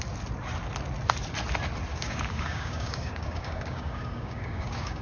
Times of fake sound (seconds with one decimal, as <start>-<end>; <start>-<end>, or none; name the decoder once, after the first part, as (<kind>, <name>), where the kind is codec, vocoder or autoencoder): 1.9-5.0 (codec, DAC)